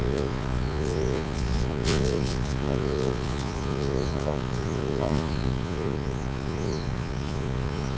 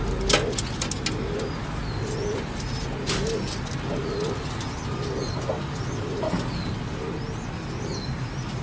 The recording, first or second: second